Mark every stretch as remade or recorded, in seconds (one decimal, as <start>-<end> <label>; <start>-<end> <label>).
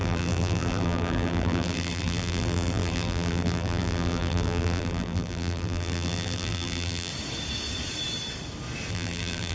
0.0-7.1 remade; 7.1-8.9 recorded; 8.9-9.5 remade